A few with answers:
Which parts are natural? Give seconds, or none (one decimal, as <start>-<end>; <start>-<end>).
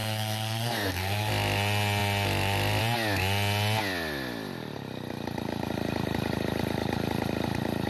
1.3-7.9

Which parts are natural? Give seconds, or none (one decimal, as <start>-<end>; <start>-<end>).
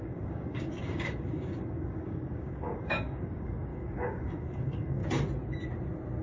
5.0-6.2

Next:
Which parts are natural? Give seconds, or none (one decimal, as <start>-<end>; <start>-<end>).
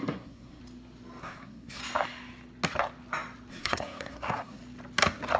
0.6-1.2; 1.8-3.5; 4.6-5.4